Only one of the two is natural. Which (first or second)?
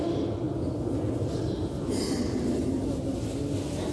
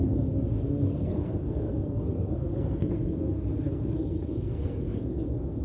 first